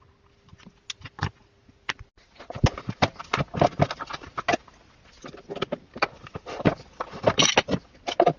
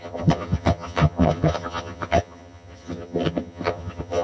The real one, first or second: first